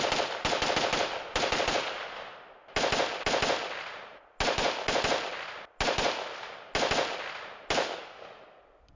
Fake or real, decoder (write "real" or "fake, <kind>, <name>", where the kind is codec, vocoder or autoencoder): real